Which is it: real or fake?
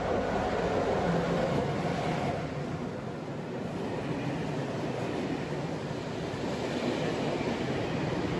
real